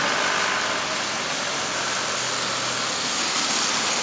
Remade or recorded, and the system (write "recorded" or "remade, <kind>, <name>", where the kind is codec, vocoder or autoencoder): recorded